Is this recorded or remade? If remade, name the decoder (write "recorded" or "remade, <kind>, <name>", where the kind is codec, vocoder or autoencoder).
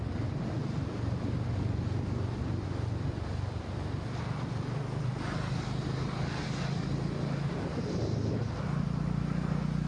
recorded